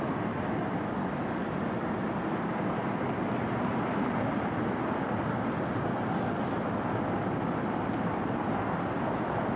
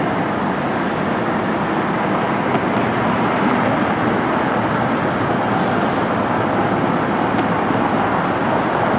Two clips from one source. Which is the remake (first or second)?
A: first